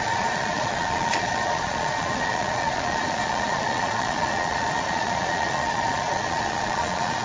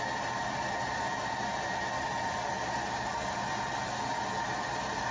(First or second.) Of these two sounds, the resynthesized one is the first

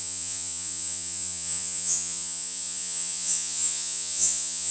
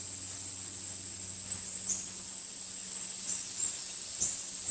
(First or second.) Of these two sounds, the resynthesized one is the first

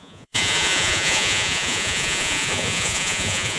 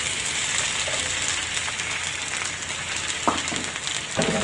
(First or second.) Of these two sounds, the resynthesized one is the first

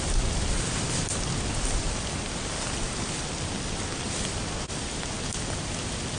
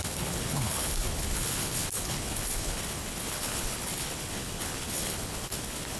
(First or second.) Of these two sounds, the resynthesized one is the second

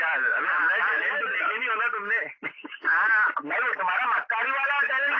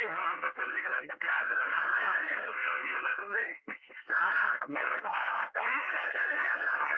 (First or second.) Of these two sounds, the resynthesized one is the second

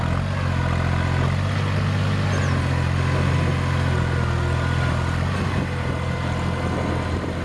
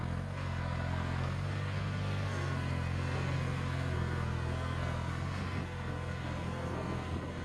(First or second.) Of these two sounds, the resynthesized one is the second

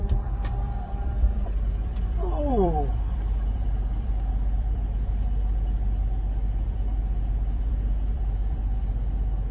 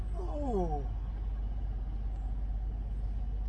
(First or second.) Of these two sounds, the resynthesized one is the first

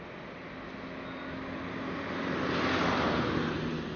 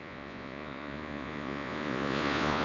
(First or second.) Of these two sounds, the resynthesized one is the second